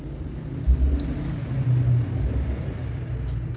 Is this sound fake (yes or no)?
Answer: no